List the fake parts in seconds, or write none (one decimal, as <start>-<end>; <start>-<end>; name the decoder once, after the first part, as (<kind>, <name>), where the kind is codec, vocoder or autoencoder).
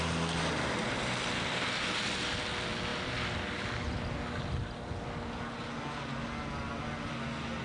none